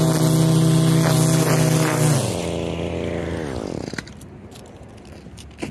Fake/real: real